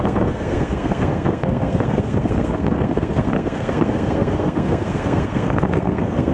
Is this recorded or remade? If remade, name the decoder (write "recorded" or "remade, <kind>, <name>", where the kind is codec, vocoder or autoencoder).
remade, codec, SNAC